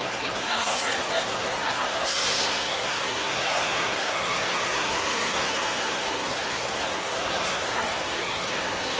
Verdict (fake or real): fake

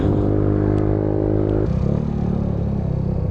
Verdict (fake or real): real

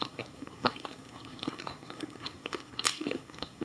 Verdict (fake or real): fake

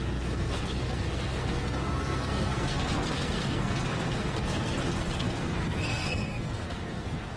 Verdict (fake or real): fake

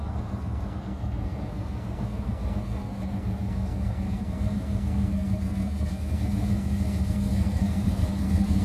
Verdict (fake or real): fake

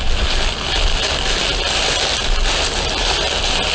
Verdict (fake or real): real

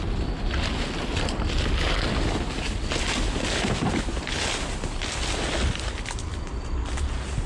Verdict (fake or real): real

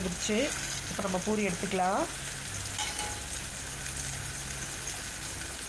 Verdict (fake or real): real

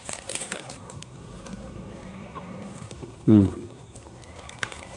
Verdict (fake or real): fake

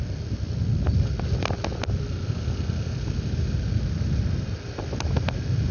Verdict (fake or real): real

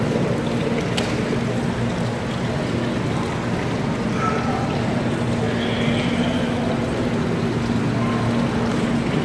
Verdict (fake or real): real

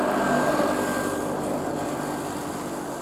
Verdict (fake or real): real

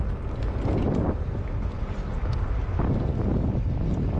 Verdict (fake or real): real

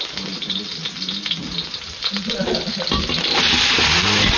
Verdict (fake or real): real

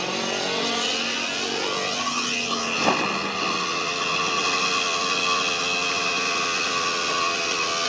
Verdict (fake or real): real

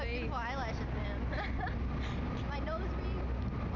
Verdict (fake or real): real